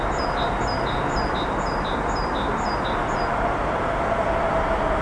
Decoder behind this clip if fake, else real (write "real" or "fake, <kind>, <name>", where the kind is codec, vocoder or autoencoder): real